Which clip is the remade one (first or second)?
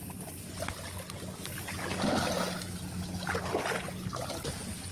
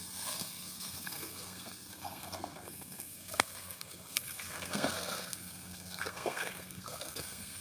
second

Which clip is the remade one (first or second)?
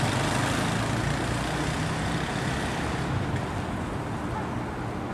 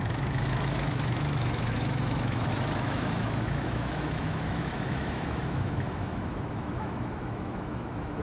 second